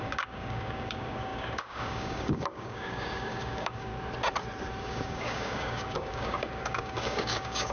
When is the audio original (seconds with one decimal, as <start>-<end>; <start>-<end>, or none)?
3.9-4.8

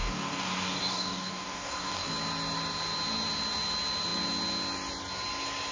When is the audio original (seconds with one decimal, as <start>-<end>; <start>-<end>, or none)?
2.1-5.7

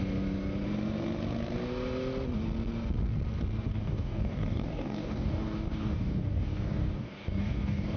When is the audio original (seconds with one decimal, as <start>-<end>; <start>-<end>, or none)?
0.0-3.7

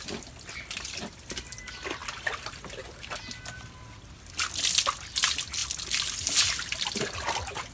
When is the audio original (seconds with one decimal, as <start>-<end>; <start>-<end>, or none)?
0.0-7.7

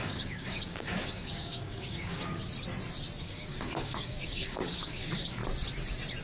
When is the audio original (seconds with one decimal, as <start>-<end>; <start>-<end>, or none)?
2.4-3.2; 5.4-6.2